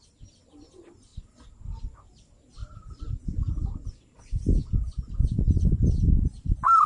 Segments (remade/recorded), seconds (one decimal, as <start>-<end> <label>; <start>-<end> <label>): 0.0-2.6 recorded; 2.6-6.9 remade